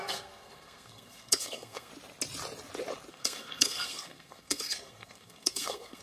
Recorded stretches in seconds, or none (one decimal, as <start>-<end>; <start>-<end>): 1.9-3.1